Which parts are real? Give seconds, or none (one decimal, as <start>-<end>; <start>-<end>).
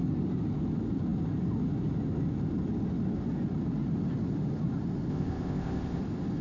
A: 0.0-5.1; 6.0-6.4